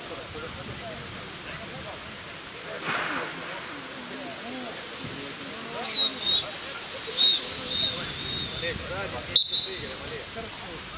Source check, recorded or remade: recorded